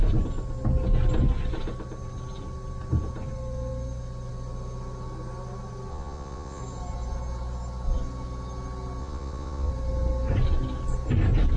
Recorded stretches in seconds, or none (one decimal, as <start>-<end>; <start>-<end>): 0.0-5.9; 6.6-9.0; 9.7-11.6